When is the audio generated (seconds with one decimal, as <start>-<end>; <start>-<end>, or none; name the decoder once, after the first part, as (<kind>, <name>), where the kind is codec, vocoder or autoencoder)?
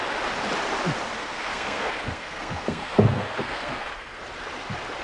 1.2-4.2 (codec, SNAC)